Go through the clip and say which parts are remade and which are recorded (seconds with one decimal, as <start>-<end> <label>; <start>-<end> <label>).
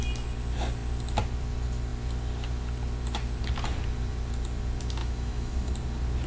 0.0-5.0 recorded; 5.0-5.7 remade; 5.7-6.3 recorded